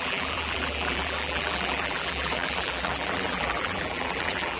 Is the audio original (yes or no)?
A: no